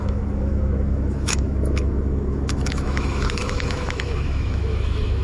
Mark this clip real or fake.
fake